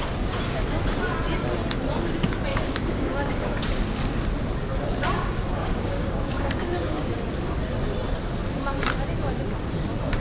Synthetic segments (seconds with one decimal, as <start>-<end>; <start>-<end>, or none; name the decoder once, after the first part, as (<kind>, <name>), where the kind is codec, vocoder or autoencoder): 2.5-3.6 (codec, DAC); 5.6-7.1